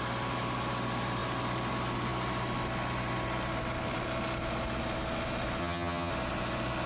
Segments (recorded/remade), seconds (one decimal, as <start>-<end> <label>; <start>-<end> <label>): 0.0-5.6 recorded; 5.6-6.1 remade; 6.1-6.9 recorded